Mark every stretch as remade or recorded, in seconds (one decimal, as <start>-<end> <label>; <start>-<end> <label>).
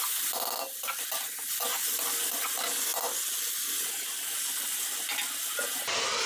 0.0-6.3 recorded